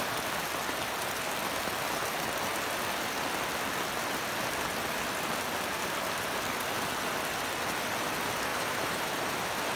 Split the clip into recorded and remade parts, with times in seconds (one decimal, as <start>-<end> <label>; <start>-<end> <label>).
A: 0.0-8.5 recorded; 8.5-9.2 remade; 9.2-9.8 recorded